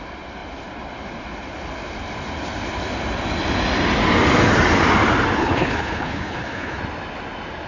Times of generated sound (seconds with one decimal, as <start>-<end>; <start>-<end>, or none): 5.4-6.8